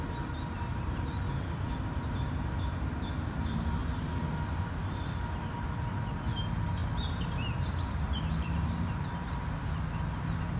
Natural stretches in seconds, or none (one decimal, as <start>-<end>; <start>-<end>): 0.0-0.7; 1.7-3.8; 6.0-6.8; 9.4-10.6